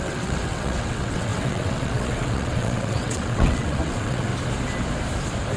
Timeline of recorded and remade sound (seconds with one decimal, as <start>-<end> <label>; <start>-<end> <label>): 0.0-4.3 remade; 4.3-5.6 recorded